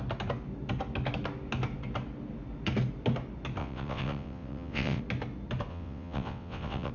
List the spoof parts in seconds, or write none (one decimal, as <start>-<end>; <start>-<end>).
3.6-5.0; 5.7-6.9